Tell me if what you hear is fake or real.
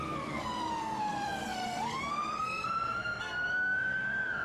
fake